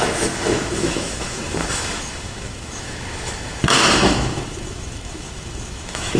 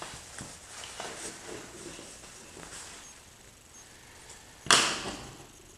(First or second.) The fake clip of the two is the first